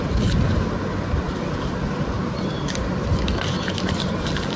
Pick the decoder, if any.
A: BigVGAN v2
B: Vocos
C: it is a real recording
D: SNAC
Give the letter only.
C